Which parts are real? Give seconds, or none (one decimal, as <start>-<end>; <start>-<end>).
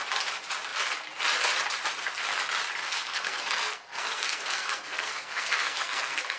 0.0-2.8